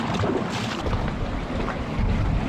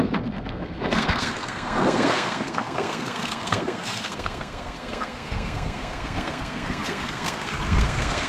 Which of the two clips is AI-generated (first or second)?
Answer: second